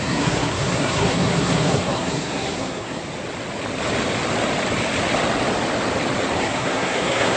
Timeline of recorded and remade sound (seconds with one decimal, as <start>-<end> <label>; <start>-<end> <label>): 0.0-3.0 remade; 3.0-6.4 recorded; 6.4-7.4 remade